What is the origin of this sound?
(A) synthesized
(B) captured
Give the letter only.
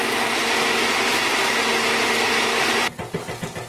B